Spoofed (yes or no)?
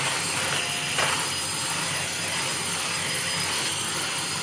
no